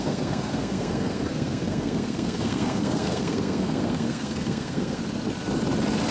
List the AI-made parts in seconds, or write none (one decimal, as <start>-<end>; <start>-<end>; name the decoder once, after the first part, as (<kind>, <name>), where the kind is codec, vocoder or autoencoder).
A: 0.0-5.0 (codec, SNAC)